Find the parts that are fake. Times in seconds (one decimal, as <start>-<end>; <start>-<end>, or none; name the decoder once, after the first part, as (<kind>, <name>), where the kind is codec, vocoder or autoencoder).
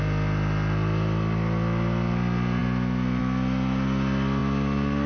none